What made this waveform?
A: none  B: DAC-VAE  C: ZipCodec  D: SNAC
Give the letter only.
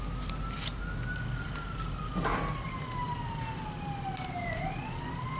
A